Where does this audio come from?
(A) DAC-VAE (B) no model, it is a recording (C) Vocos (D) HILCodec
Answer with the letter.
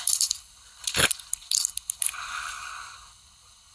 D